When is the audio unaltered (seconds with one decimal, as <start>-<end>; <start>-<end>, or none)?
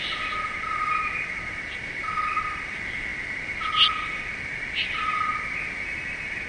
0.0-6.5